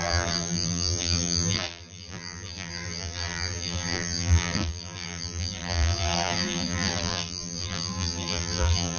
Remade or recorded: remade